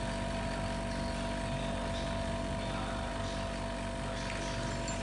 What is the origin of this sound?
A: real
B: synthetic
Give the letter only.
A